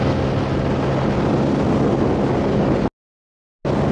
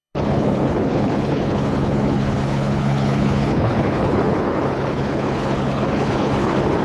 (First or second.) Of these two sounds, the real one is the first